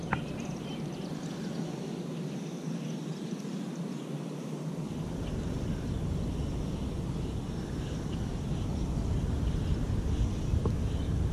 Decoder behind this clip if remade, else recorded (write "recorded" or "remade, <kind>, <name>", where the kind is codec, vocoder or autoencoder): recorded